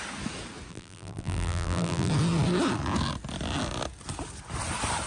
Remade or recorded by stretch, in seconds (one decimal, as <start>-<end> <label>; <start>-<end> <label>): 0.0-0.7 recorded; 0.7-2.1 remade; 2.1-5.1 recorded